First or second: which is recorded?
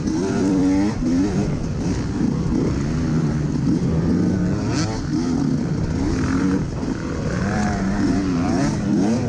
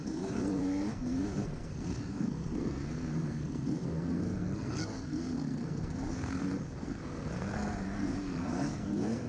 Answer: first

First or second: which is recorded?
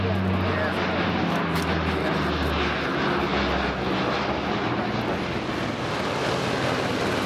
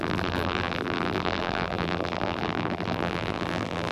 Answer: first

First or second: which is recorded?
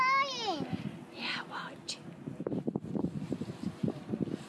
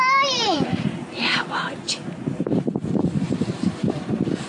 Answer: first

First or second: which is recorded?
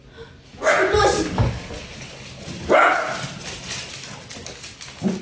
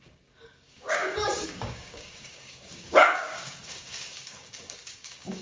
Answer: first